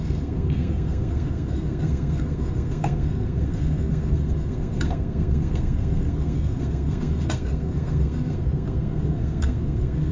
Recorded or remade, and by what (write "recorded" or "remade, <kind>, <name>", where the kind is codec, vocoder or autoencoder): remade, codec, SNAC